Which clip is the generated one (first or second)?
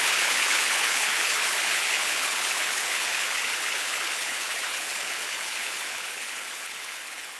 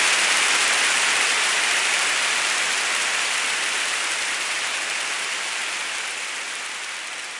first